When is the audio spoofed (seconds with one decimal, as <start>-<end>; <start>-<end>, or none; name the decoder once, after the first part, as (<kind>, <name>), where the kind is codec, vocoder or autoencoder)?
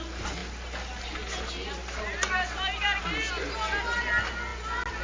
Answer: none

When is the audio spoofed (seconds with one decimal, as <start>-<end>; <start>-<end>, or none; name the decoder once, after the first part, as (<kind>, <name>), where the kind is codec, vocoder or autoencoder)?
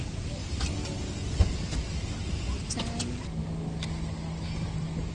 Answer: none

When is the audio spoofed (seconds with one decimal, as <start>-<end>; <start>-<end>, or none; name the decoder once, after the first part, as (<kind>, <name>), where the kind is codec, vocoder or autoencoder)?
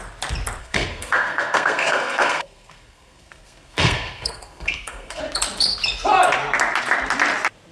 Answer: 0.6-5.2 (codec, SNAC)